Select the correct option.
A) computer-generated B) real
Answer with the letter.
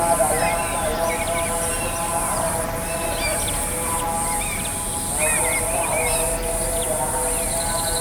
B